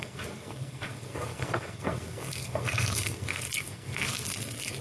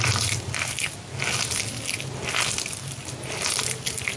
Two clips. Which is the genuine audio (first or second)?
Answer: second